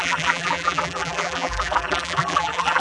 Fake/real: fake